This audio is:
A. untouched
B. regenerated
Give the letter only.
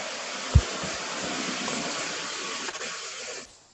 A